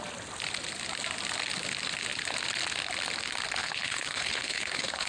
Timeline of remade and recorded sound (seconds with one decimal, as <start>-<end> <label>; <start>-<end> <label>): 0.0-3.6 recorded; 3.6-5.1 remade